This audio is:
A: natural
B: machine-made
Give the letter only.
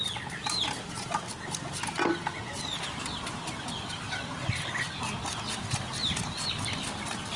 A